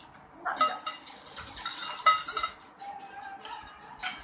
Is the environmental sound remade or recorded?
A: recorded